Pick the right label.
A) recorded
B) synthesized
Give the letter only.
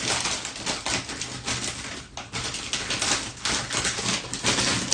A